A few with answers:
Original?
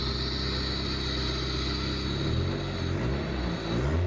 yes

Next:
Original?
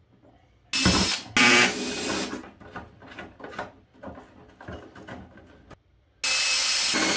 yes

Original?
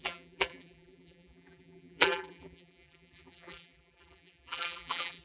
no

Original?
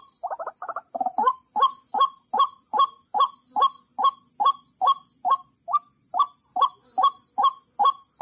yes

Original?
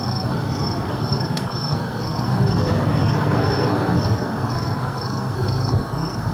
no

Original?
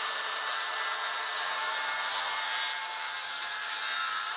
no